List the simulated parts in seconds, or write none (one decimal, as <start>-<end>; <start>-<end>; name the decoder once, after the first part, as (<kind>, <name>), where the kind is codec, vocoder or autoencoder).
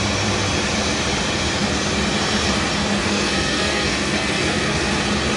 3.0-4.9 (codec, SNAC)